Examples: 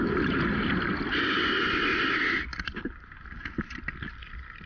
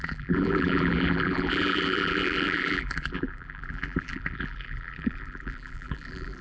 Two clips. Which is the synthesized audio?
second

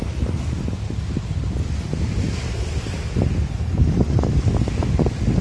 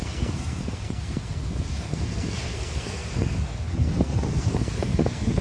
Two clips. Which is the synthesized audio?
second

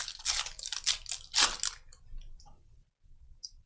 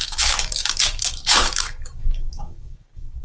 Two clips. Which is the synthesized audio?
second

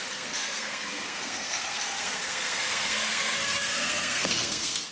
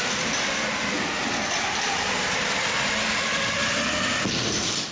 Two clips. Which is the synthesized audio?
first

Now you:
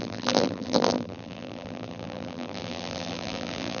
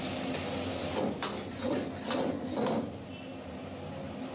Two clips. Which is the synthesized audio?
first